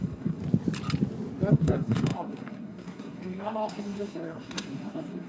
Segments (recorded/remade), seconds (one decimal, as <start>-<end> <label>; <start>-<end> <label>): 0.0-0.4 remade; 0.4-1.5 recorded; 1.5-5.3 remade